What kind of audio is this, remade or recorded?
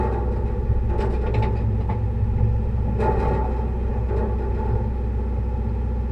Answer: recorded